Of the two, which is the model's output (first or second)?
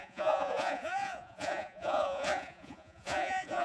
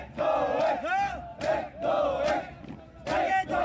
first